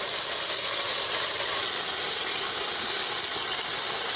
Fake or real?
real